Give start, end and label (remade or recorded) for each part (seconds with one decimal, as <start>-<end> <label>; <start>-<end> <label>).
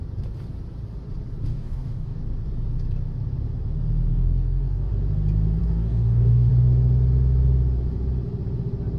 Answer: 0.0-1.5 recorded; 1.5-2.2 remade; 2.2-4.1 recorded; 4.1-4.9 remade; 4.9-5.6 recorded; 5.6-6.5 remade; 6.5-9.0 recorded